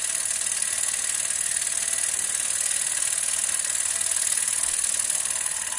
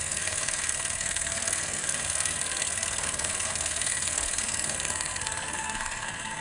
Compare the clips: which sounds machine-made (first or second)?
second